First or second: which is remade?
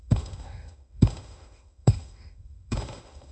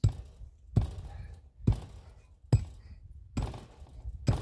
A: first